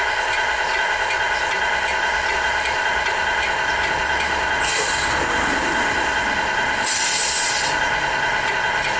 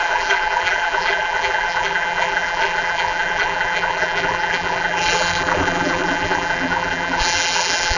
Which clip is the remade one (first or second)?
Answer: second